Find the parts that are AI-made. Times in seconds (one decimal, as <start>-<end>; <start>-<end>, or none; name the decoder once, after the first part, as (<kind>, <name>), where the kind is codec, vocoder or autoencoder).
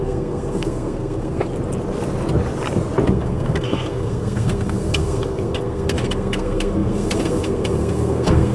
0.0-1.5 (codec, SNAC); 3.1-8.5